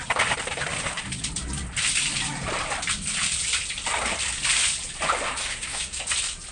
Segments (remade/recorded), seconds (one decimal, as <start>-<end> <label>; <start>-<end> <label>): 0.0-5.4 recorded; 5.4-6.0 remade; 6.0-6.5 recorded